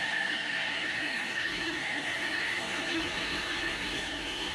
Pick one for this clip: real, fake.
fake